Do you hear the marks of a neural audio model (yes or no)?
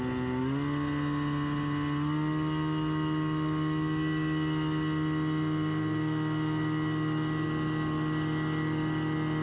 no